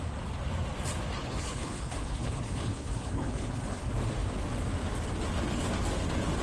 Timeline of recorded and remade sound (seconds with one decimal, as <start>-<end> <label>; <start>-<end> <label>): 0.0-1.2 recorded; 1.2-3.9 remade; 3.9-6.4 recorded